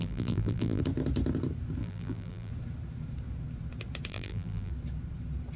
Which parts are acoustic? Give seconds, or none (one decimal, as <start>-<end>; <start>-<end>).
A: 0.8-1.8; 2.5-4.1; 4.7-5.6